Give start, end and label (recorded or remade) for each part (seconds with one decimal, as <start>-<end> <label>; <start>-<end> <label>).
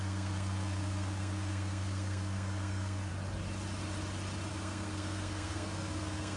0.0-3.1 remade; 3.1-4.5 recorded; 4.5-6.4 remade